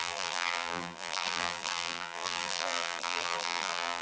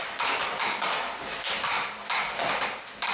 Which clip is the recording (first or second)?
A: second